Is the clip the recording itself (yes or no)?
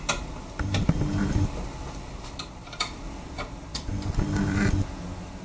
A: yes